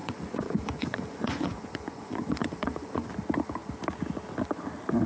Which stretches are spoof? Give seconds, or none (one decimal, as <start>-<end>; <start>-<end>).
0.0-3.1